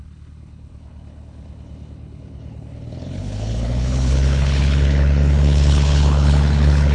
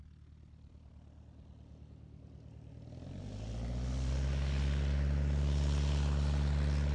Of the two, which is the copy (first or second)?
first